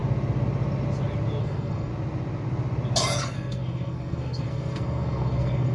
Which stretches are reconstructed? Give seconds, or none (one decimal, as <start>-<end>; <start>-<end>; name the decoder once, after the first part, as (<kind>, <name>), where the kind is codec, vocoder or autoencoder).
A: 1.4-1.9 (codec, SNAC); 3.2-5.7